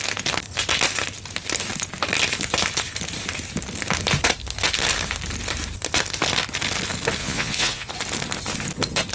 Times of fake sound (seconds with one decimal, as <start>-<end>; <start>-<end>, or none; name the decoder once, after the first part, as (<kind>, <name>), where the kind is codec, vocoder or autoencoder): 7.2-7.9 (vocoder, Vocos)